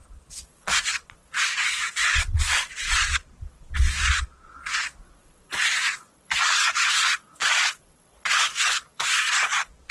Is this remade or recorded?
remade